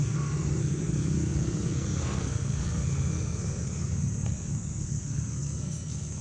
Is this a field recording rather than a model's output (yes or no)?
no